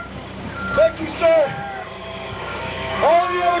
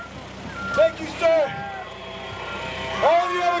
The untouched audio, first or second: second